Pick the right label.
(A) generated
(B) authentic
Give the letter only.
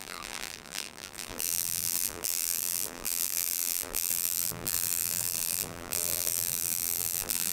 A